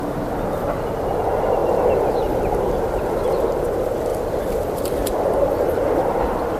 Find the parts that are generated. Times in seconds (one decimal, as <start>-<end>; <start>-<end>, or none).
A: 4.1-5.4